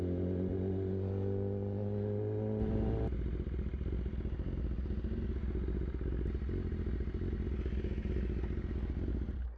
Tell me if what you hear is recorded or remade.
recorded